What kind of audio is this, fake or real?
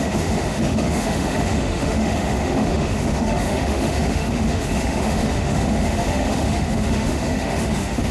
fake